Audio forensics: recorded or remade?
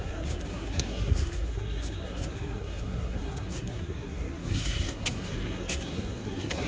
remade